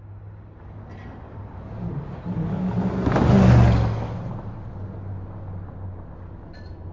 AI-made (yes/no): no